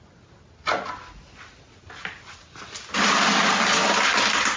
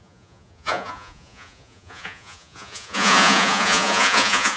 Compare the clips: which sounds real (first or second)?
first